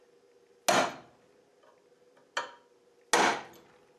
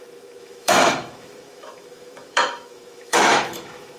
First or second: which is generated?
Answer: second